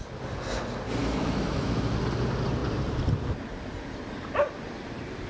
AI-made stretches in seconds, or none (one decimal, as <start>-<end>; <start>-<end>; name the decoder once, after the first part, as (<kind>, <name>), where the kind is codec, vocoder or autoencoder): 1.0-1.9 (autoencoder, DAC-VAE)

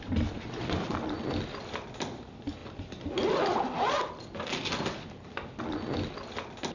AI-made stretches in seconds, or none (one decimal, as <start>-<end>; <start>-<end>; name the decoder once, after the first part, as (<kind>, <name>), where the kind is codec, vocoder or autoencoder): none

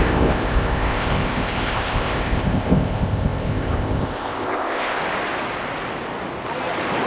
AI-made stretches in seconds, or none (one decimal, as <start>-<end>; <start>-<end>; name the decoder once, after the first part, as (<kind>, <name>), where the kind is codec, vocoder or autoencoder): 0.0-5.0 (codec, ZipCodec)

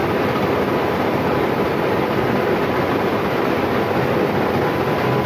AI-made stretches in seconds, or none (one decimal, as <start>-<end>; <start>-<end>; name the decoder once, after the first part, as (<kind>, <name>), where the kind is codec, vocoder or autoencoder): 0.0-3.2 (vocoder, BigVGAN v2)